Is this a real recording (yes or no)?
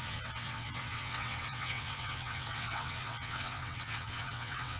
no